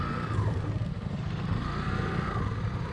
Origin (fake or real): real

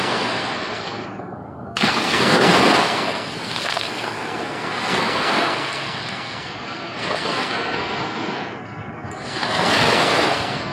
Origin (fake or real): fake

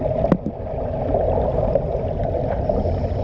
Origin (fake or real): real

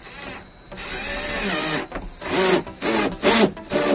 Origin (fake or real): real